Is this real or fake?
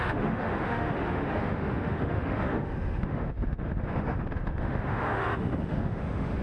fake